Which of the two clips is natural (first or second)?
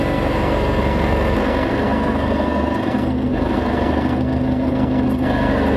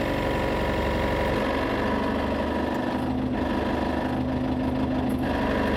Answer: second